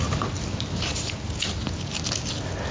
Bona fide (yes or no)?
yes